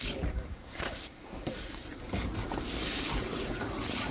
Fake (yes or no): yes